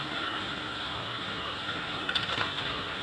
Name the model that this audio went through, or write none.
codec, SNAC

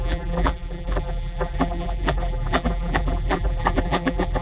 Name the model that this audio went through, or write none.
vocoder, BigVGAN v2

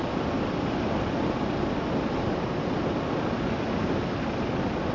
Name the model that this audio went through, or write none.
none